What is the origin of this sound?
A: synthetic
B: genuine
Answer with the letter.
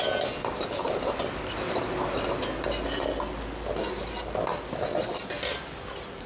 B